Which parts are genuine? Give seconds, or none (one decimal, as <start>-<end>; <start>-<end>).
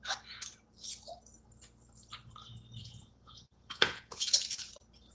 0.0-2.8; 4.3-5.1